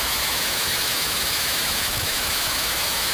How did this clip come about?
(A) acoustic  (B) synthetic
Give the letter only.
B